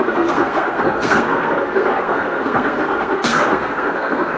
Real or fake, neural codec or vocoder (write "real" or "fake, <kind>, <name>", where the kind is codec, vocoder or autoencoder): fake, codec, SNAC